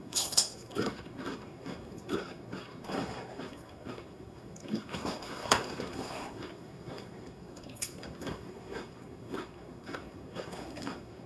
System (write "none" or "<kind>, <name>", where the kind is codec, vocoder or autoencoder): codec, SNAC